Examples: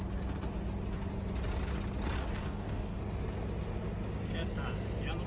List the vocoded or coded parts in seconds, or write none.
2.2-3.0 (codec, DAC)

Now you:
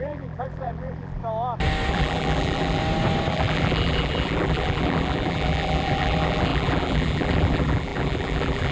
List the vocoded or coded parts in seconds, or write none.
0.0-1.2 (vocoder, BigVGAN v2); 1.9-2.8; 3.3-8.7